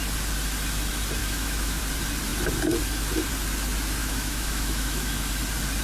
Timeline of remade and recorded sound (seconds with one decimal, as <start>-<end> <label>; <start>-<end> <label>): 0.0-1.2 recorded; 1.2-1.8 remade; 1.8-4.0 recorded; 4.0-5.3 remade; 5.3-5.8 recorded